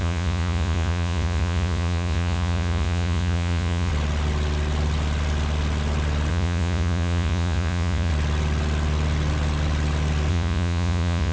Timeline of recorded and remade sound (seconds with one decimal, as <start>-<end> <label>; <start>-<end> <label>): 0.0-3.9 remade; 3.9-6.3 recorded; 6.3-8.1 remade; 8.1-10.3 recorded; 10.3-11.3 remade